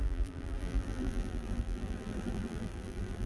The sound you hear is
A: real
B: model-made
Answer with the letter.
B